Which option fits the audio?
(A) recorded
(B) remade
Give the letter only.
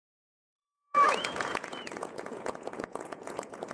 B